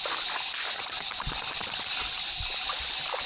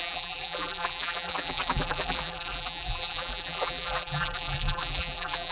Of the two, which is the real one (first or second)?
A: first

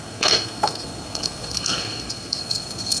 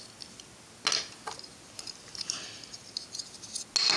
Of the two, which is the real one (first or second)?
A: second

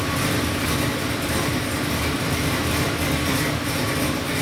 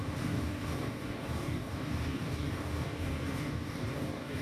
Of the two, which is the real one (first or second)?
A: first